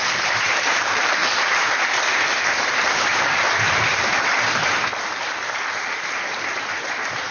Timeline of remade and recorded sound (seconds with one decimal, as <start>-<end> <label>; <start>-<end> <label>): 0.0-1.2 remade; 1.2-2.4 recorded; 2.4-3.1 remade; 3.1-6.7 recorded; 6.7-7.3 remade